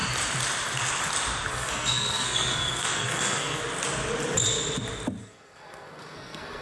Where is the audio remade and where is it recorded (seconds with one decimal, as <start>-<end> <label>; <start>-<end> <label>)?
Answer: 0.0-1.5 recorded; 1.5-3.6 remade; 3.6-5.2 recorded; 5.2-6.6 remade